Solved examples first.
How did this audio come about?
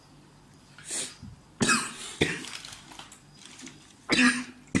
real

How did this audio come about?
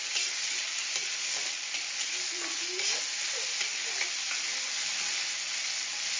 real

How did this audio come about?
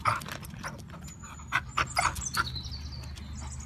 real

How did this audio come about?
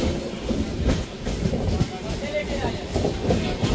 real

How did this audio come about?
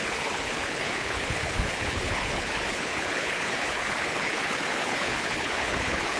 fake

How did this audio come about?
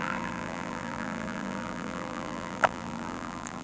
fake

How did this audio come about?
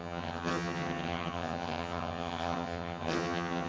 fake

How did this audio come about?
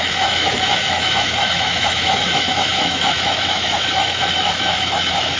fake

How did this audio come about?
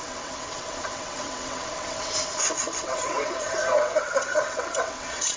fake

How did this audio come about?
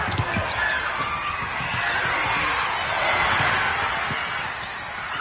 real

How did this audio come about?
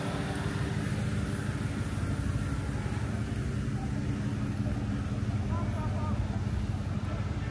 real